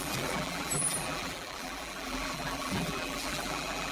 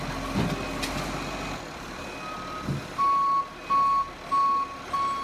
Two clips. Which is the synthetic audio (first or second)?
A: first